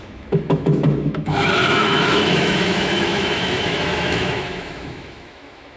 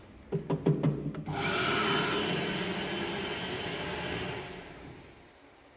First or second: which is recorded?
second